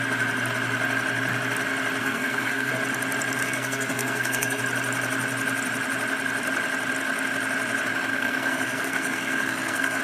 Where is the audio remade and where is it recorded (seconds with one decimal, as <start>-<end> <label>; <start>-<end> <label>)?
0.0-2.0 recorded; 2.0-2.7 remade; 2.7-3.4 recorded; 3.4-4.6 remade; 4.6-8.1 recorded; 8.1-10.0 remade